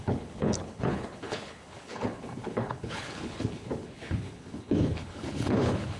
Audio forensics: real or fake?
fake